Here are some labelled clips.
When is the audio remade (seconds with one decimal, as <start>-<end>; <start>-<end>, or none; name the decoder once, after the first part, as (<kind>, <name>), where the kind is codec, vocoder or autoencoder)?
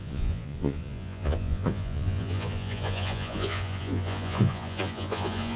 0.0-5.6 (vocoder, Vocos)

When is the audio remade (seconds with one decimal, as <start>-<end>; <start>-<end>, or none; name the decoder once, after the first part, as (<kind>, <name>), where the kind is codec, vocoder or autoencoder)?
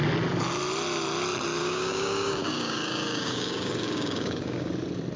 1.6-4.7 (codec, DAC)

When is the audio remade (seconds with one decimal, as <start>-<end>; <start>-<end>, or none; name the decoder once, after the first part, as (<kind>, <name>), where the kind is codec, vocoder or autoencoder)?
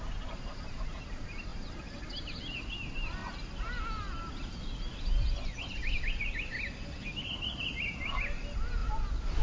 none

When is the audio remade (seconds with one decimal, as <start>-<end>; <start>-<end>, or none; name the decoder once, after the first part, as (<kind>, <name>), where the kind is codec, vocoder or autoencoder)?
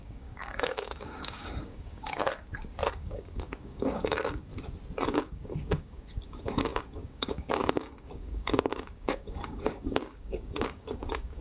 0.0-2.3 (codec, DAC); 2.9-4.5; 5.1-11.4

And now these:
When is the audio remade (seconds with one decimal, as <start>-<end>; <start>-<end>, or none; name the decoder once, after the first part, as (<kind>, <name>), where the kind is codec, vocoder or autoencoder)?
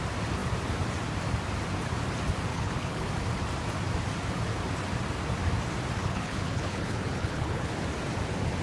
2.5-3.1 (codec, HILCodec); 6.0-7.7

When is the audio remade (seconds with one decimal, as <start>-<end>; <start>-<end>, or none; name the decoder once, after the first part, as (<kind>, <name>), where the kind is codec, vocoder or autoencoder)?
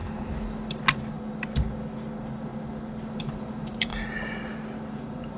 3.2-3.9 (vocoder, BigVGAN v2); 4.9-5.4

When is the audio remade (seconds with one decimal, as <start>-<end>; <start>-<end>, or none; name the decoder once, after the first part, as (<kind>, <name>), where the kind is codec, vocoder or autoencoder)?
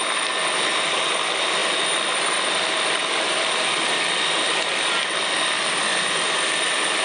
none